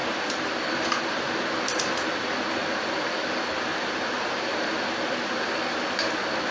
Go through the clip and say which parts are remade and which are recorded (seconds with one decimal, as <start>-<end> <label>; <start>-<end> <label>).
0.0-1.4 remade; 1.4-3.7 recorded; 3.7-5.4 remade; 5.4-6.5 recorded